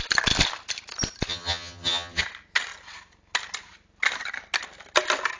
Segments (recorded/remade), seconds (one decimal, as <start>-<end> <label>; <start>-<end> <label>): 0.0-1.3 recorded; 1.3-2.2 remade; 2.2-5.4 recorded